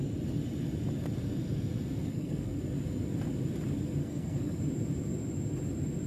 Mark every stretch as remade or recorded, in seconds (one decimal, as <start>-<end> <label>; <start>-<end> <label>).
0.0-2.0 recorded; 2.0-2.6 remade; 2.6-4.0 recorded; 4.0-4.6 remade; 4.6-6.1 recorded